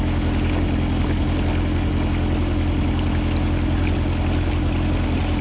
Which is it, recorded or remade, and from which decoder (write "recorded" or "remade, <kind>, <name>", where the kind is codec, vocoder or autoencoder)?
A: recorded